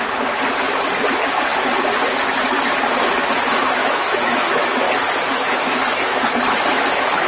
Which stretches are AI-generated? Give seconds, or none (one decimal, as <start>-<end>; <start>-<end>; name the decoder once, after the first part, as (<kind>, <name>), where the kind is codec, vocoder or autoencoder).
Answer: 3.8-7.3 (autoencoder, DAC-VAE)